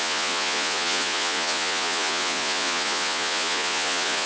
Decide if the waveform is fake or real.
fake